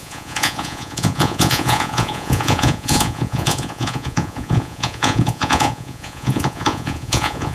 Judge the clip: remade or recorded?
remade